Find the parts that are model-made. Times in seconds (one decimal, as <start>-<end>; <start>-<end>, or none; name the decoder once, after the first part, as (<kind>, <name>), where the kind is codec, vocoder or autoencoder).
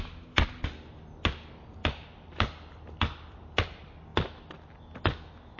1.8-3.3 (vocoder, BigVGAN v2); 4.1-4.6